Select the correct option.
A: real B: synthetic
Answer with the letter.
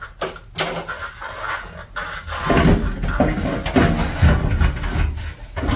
A